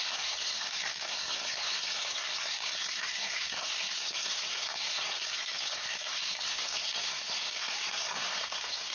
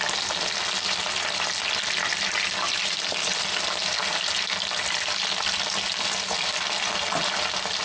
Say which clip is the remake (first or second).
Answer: first